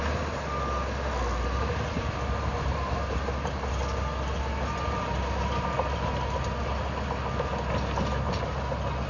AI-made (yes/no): no